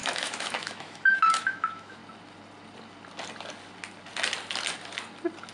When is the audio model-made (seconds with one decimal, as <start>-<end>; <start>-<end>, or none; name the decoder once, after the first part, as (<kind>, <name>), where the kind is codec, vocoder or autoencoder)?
0.0-2.0 (autoencoder, DAC-VAE)